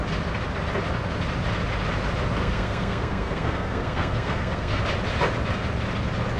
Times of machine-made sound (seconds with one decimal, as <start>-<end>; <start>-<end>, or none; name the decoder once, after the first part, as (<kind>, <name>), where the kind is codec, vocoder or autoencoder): 2.4-4.8 (codec, SNAC)